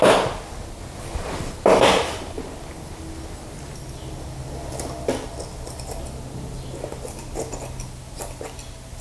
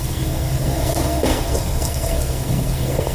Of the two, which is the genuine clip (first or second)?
first